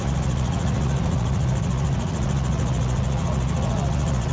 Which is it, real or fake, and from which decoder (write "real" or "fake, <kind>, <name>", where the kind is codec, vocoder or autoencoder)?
fake, vocoder, Vocos